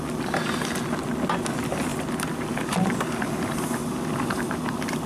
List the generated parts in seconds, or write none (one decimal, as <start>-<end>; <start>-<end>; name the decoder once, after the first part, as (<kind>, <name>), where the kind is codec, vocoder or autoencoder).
1.9-5.1 (vocoder, BigVGAN v2)